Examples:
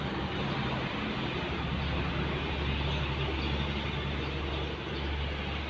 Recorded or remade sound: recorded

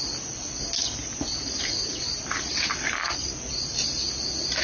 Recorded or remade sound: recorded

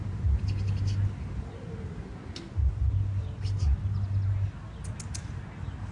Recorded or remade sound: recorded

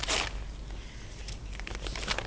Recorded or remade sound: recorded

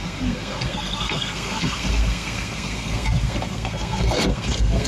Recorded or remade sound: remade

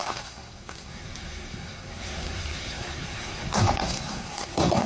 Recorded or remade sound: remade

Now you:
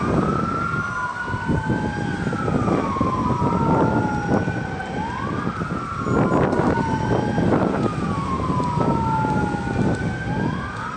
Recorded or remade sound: recorded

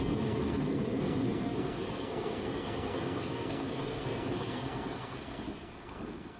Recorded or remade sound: remade